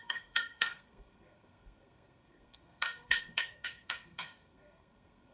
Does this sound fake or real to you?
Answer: fake